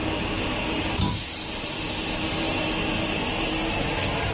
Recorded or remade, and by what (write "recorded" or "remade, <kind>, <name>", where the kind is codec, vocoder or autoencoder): recorded